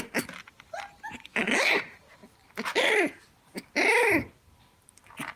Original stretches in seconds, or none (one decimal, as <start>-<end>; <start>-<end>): 0.0-1.3; 1.8-5.4